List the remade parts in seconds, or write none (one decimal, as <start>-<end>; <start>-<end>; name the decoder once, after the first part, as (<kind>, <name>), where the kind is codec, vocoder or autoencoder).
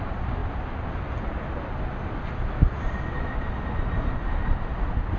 none